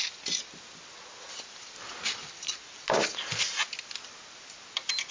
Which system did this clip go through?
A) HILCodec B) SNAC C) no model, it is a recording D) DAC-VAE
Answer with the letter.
C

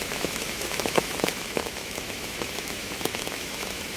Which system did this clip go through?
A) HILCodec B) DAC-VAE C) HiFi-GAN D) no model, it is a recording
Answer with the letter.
B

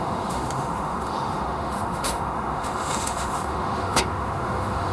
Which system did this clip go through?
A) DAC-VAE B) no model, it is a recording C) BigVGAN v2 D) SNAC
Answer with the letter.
A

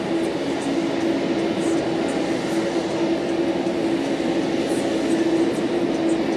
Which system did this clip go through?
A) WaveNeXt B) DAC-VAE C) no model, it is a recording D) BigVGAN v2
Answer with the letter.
C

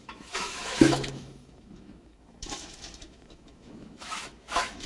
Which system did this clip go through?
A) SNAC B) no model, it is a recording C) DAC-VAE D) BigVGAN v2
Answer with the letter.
C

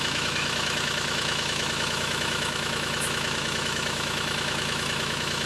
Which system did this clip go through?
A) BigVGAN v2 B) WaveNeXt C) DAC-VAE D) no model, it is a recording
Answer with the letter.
C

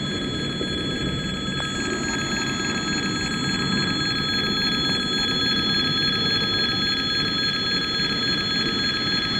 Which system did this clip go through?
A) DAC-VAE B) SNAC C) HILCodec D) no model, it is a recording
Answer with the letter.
D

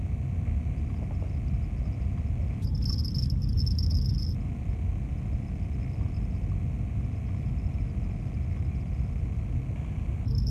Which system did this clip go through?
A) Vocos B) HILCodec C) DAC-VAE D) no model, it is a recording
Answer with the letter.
D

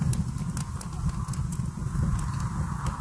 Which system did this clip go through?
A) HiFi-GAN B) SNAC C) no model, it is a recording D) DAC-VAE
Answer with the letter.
C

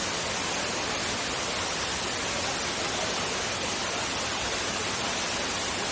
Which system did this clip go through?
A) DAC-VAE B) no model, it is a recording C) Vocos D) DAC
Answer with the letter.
B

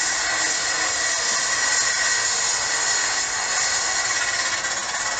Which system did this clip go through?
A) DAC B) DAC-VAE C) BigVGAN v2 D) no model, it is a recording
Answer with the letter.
D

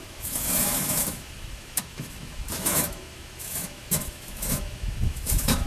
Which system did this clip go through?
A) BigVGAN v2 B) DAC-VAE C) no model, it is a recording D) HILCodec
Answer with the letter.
B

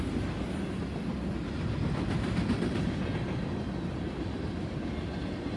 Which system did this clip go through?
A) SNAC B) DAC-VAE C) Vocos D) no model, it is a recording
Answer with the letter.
D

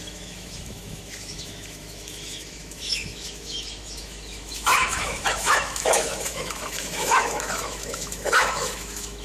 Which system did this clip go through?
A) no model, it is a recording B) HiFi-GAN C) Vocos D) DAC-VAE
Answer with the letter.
D